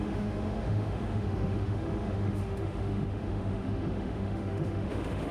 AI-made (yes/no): yes